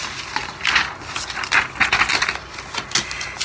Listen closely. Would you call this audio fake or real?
real